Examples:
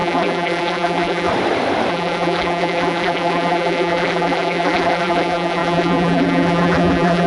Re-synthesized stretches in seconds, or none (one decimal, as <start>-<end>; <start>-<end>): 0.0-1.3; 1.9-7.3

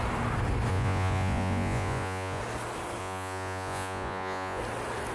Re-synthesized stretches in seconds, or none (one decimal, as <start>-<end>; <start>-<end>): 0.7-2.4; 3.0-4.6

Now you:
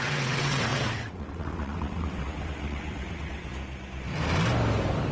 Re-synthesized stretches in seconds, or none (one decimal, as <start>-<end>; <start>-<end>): 0.0-3.5

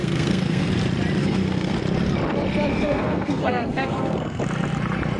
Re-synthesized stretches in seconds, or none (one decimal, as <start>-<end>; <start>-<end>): 0.0-0.7; 1.2-1.8; 2.7-4.4